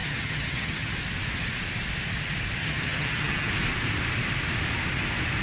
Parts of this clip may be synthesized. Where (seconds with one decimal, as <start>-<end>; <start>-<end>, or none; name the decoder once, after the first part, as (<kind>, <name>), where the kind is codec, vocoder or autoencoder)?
0.0-0.9 (vocoder, HiFi-GAN); 2.6-3.5